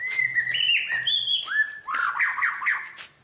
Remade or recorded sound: recorded